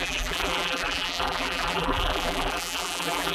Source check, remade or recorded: remade